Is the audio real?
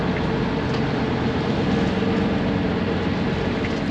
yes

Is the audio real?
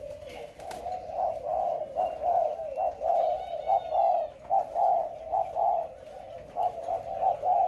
yes